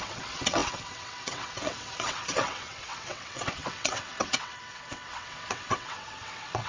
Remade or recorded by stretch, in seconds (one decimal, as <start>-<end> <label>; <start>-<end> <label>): 0.0-6.7 remade